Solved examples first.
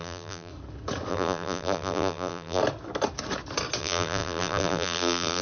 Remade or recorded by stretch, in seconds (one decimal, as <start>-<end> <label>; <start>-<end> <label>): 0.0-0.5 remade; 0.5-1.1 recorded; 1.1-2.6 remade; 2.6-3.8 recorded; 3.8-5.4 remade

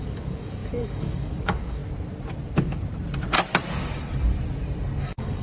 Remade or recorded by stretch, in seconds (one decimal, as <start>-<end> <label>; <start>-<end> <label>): 0.0-1.8 remade; 1.8-5.0 recorded; 5.0-5.4 remade

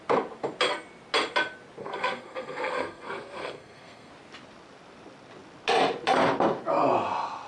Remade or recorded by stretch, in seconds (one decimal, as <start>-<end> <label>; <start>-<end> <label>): 0.0-1.8 recorded; 1.8-4.1 remade; 4.1-7.5 recorded

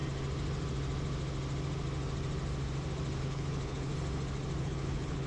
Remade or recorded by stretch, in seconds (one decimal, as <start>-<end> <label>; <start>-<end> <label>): 0.0-3.2 recorded; 3.2-3.9 remade; 3.9-4.6 recorded; 4.6-5.3 remade

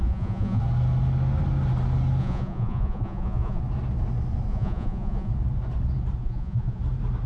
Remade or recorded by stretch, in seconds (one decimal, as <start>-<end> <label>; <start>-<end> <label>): 0.0-0.6 remade; 0.6-2.2 recorded; 2.2-3.6 remade; 3.6-4.5 recorded; 4.5-5.3 remade; 5.3-6.2 recorded; 6.2-6.8 remade; 6.8-7.3 recorded

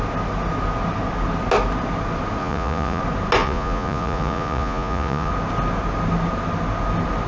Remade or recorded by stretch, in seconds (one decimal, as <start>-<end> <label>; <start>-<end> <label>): 0.0-2.4 recorded; 2.4-3.0 remade; 3.0-3.4 recorded; 3.4-5.3 remade; 5.3-7.3 recorded

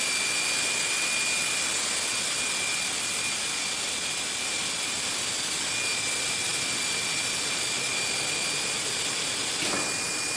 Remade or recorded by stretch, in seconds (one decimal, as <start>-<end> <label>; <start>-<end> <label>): 0.0-10.4 recorded